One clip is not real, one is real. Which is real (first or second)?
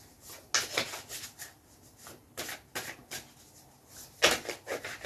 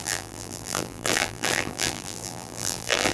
first